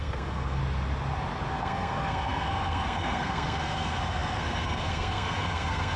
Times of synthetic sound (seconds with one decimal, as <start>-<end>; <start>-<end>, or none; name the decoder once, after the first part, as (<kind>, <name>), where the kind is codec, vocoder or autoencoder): 0.0-0.6 (codec, SNAC); 1.5-6.0